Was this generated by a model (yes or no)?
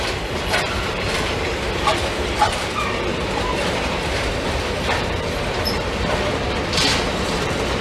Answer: yes